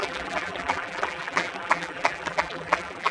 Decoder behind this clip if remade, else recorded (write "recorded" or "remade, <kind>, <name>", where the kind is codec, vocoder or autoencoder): remade, vocoder, BigVGAN v2